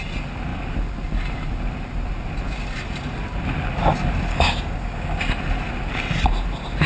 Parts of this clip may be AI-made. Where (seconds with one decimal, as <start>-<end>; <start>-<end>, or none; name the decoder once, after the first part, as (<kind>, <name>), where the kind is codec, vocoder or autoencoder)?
4.3-5.3 (codec, DAC)